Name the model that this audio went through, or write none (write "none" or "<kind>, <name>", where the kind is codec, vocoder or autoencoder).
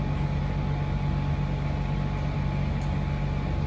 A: none